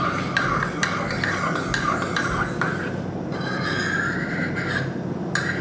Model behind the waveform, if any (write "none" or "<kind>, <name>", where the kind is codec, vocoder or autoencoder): none